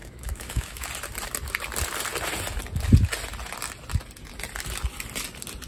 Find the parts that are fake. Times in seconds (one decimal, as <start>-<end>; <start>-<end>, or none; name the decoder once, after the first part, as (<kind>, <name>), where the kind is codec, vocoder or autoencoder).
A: 0.0-0.9 (autoencoder, DAC-VAE)